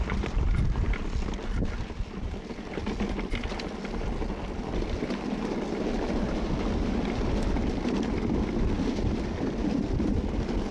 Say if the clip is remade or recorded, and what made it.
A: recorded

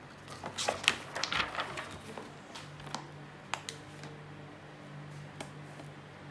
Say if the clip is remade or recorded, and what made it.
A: recorded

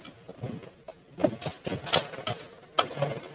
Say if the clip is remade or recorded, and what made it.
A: recorded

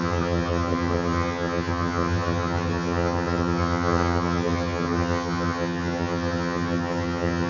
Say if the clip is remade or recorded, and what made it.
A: remade, vocoder, HiFi-GAN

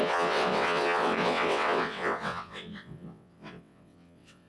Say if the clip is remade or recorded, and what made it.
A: remade, vocoder, WaveNeXt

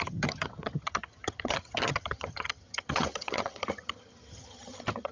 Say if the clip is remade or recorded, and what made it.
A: remade, vocoder, HiFi-GAN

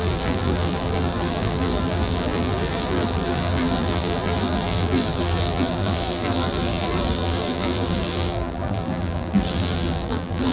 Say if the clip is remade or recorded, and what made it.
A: remade, vocoder, BigVGAN v2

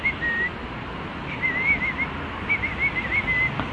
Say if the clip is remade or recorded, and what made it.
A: recorded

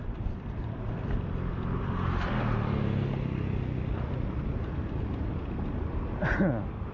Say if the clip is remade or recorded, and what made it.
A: recorded